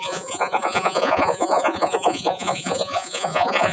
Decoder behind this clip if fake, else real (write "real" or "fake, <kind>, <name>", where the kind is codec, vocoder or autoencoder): fake, vocoder, Vocos